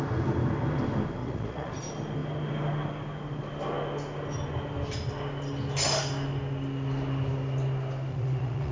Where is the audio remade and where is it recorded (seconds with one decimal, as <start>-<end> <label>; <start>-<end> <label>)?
0.0-1.2 recorded; 1.2-1.7 remade; 1.7-8.1 recorded; 8.1-8.7 remade